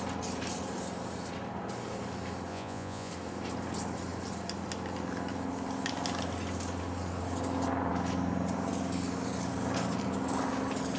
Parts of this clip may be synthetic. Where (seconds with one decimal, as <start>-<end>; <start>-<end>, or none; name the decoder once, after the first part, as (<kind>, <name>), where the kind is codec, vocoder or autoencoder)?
2.5-3.1 (vocoder, Vocos)